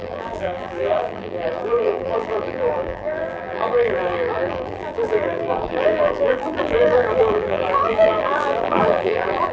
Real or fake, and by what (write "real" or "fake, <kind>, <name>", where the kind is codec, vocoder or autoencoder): fake, vocoder, BigVGAN v2